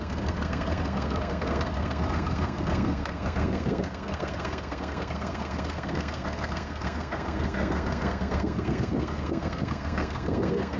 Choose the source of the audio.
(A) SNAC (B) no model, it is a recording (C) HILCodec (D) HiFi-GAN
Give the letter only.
A